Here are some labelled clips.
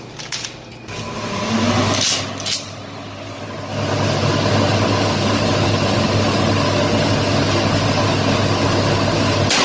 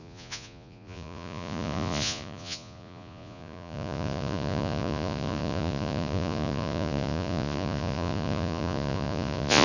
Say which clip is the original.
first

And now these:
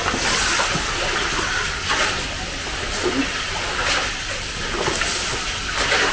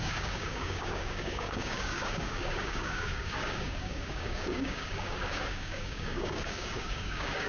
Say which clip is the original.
first